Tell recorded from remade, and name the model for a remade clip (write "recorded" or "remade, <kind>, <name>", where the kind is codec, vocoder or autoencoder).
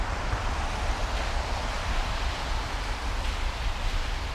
remade, vocoder, BigVGAN v2